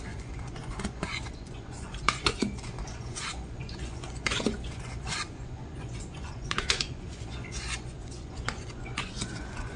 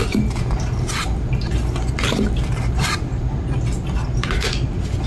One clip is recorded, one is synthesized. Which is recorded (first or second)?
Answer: second